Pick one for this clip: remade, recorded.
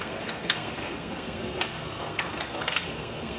remade